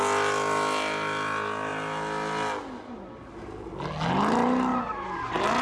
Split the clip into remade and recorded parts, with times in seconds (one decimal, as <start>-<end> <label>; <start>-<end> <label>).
0.0-5.6 recorded